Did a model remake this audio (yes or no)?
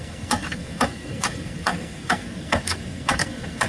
yes